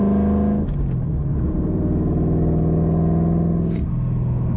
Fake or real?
real